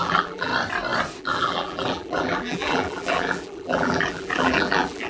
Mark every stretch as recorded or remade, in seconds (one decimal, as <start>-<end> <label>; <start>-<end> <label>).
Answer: 0.0-0.5 remade; 0.5-1.2 recorded; 1.2-5.1 remade